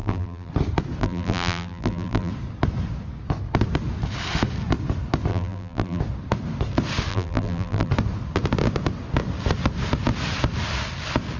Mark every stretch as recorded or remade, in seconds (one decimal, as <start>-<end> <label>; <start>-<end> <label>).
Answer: 0.0-0.5 remade; 0.5-1.0 recorded; 1.0-2.3 remade; 2.3-5.3 recorded; 5.3-6.0 remade; 6.0-7.1 recorded; 7.1-7.9 remade; 7.9-11.4 recorded